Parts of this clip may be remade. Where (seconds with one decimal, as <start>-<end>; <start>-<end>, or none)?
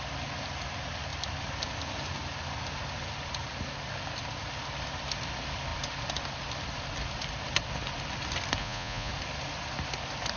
8.6-9.1